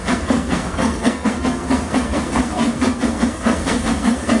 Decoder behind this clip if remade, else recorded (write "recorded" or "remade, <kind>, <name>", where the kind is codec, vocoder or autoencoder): remade, codec, SNAC